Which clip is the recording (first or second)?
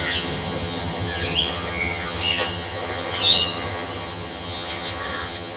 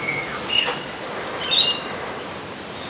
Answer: second